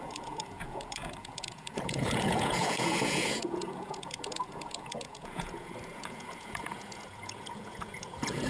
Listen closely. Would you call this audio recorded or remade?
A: remade